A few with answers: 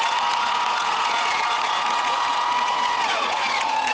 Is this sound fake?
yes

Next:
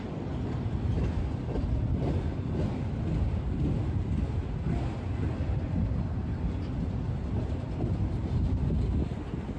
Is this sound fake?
no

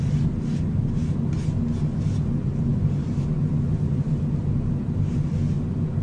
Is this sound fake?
no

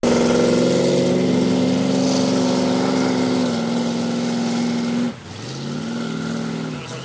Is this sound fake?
no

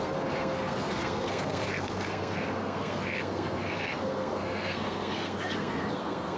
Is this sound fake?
yes